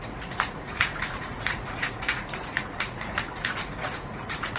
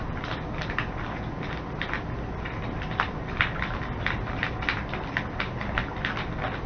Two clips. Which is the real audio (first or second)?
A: second